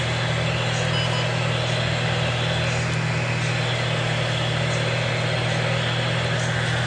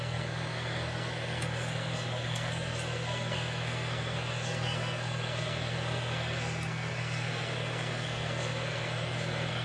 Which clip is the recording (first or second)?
first